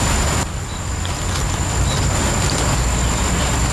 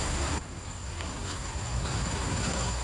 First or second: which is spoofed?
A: second